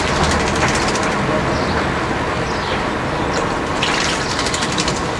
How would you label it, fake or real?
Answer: real